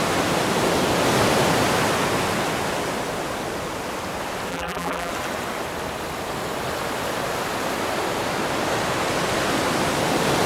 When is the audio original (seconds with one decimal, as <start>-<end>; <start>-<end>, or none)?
0.0-4.5; 5.1-10.5